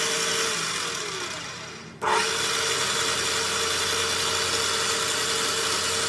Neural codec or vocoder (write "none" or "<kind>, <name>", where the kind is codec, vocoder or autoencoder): none